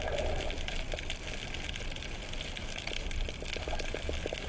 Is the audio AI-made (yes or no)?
no